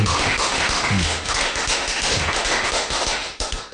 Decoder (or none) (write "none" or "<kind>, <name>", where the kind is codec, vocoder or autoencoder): autoencoder, DAC-VAE